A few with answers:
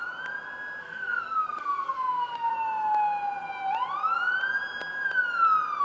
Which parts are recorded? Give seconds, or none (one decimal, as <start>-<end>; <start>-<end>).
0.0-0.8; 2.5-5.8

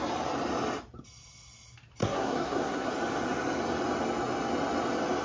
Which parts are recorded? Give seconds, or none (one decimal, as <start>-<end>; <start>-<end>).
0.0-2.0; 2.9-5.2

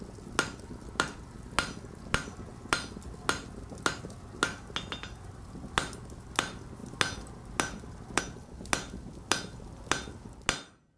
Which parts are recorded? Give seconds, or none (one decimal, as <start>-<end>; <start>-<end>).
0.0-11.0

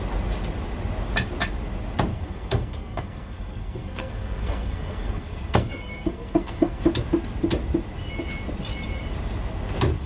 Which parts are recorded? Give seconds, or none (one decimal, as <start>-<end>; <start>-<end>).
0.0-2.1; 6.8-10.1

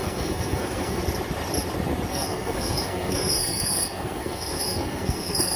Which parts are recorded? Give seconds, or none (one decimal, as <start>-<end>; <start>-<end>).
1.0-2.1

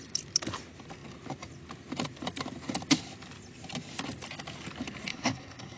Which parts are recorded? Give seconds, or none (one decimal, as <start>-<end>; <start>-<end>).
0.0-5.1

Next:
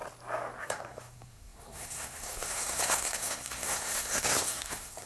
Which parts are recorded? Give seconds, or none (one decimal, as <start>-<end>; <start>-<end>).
0.0-0.6